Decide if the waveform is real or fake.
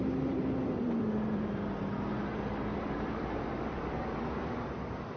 fake